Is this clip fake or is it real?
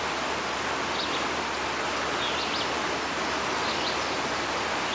real